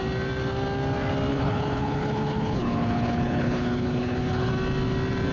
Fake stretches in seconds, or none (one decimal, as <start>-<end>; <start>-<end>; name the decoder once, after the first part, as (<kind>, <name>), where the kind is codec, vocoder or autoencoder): 1.3-4.5 (codec, HILCodec)